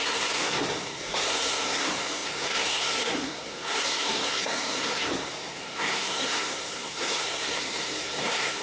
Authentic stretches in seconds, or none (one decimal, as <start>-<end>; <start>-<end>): none